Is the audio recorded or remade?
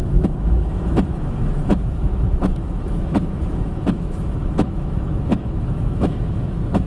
remade